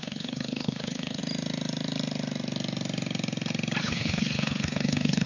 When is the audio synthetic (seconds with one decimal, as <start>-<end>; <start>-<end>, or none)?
0.0-1.2; 3.8-5.3